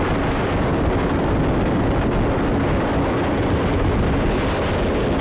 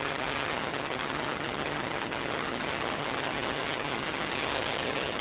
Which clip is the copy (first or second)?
second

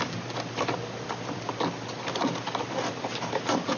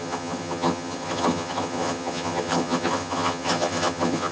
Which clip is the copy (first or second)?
second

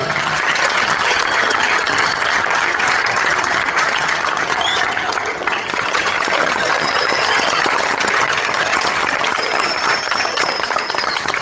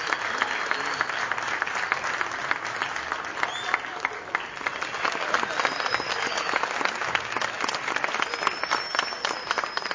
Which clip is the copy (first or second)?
first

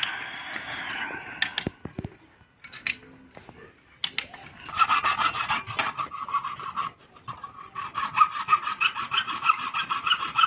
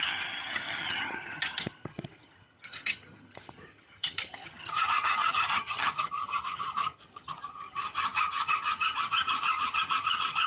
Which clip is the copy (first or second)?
second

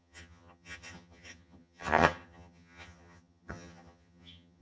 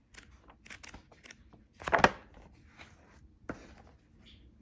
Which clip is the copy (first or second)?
first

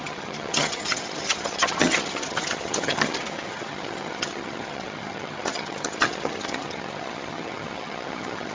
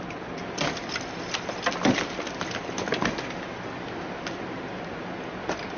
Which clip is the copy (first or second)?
first